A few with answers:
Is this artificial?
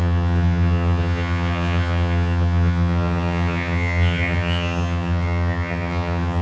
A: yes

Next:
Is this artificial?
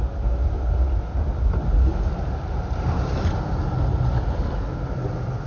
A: no